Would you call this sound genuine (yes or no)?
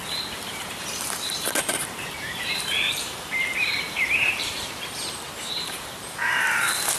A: no